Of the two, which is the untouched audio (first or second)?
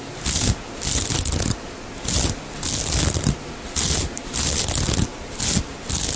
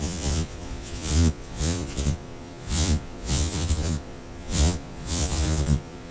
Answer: first